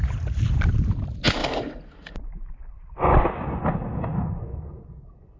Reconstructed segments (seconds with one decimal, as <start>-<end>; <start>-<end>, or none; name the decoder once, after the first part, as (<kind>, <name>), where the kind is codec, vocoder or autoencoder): none